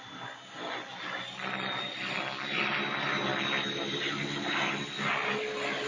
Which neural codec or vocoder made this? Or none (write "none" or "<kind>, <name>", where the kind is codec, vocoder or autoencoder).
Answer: none